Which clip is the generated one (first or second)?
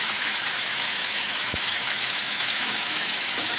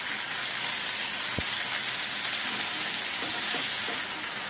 first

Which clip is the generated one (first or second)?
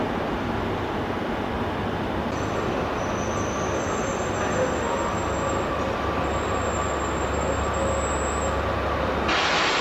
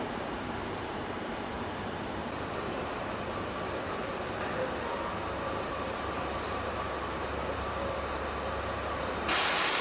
second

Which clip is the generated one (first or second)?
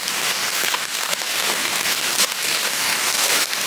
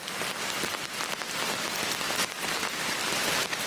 first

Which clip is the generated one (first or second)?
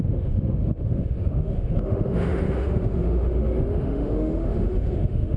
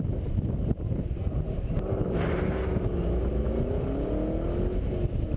first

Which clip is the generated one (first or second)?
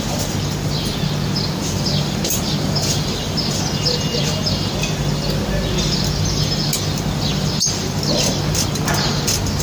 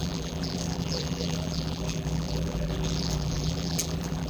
second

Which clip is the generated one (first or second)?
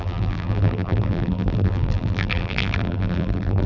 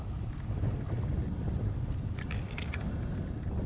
first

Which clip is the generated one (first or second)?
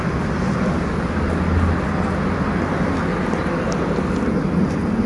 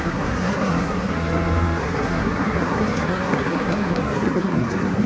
second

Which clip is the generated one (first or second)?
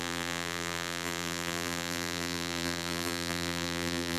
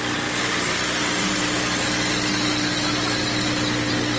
first